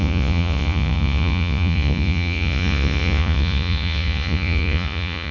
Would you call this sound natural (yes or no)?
no